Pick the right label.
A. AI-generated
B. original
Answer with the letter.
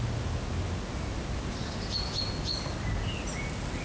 B